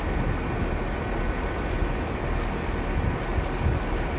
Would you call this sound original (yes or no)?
yes